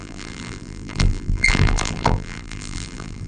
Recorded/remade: remade